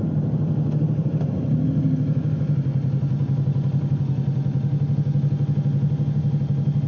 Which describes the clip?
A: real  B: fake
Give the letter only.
A